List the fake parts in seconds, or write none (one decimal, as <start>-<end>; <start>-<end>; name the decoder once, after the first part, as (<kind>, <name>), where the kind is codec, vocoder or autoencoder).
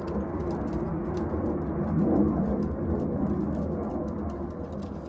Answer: none